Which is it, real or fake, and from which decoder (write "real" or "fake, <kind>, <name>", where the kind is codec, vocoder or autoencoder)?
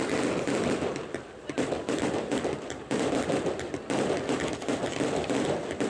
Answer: real